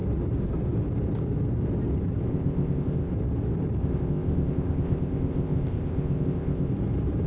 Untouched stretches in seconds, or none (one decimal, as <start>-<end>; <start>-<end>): 0.0-2.3; 3.1-3.8; 6.7-7.3